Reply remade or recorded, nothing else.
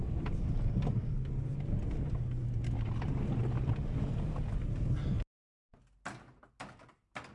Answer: recorded